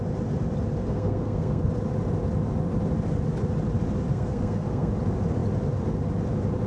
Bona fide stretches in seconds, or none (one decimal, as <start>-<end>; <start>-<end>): 0.0-0.8; 1.7-4.1; 4.9-6.7